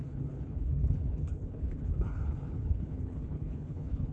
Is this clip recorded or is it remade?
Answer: remade